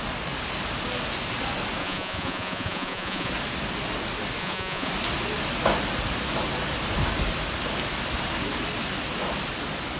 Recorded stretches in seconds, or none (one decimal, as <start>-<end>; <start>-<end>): 0.0-1.8; 3.3-4.4; 4.9-10.0